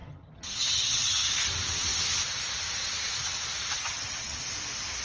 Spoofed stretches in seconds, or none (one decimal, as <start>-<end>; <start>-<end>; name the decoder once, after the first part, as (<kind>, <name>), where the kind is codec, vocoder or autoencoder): 0.0-1.3 (vocoder, HiFi-GAN); 3.7-4.4